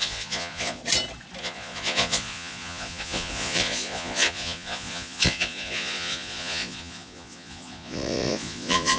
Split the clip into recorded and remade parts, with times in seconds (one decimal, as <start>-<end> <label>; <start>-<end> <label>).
0.0-0.8 remade; 0.8-1.4 recorded; 1.4-9.0 remade